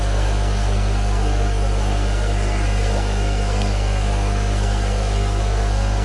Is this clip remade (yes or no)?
yes